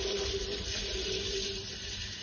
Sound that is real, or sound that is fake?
real